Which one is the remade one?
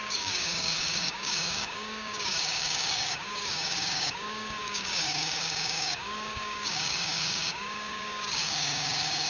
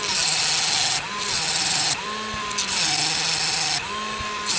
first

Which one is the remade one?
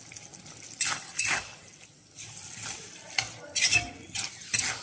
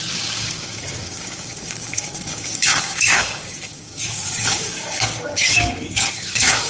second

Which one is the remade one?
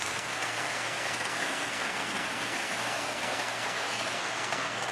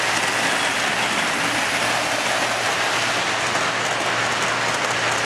first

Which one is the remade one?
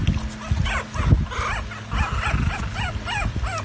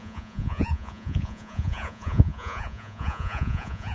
second